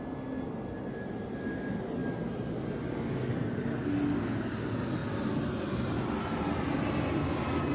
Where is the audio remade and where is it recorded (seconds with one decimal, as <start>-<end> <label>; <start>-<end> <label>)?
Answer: 0.0-7.7 recorded